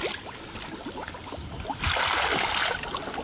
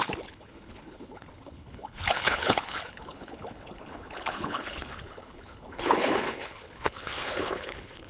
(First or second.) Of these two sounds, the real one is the first